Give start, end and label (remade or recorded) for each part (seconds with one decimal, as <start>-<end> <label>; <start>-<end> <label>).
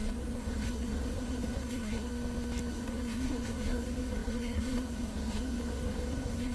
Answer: 0.0-2.1 remade; 2.1-2.7 recorded; 2.7-6.5 remade